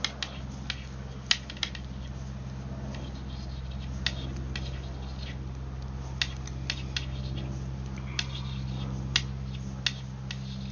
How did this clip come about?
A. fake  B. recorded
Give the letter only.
B